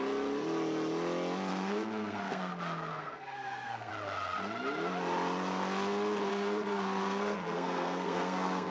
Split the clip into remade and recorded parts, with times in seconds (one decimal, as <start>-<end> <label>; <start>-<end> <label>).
0.0-1.5 recorded; 1.5-2.5 remade; 2.5-2.9 recorded; 2.9-3.9 remade; 3.9-6.3 recorded; 6.3-8.7 remade

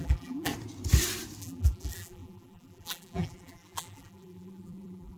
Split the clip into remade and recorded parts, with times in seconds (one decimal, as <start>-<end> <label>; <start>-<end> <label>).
0.0-0.5 remade; 0.5-1.4 recorded; 1.4-5.2 remade

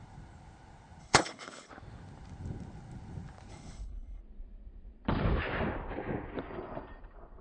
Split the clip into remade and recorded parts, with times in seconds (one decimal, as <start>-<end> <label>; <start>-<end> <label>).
0.0-1.0 recorded; 1.0-1.7 remade; 1.7-3.5 recorded; 3.5-4.2 remade; 4.2-7.4 recorded

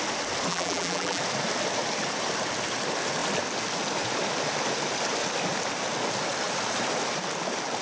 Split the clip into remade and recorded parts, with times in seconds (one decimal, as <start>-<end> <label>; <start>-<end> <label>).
0.0-0.5 recorded; 0.5-1.2 remade; 1.2-7.8 recorded

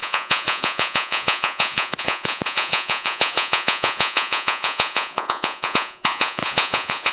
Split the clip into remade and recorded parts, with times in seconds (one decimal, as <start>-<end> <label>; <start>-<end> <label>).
0.0-7.1 remade